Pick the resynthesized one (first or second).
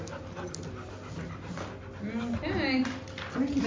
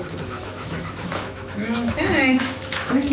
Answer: second